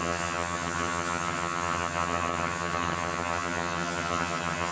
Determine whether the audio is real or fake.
fake